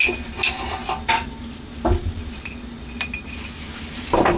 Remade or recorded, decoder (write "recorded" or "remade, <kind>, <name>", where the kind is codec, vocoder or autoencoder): recorded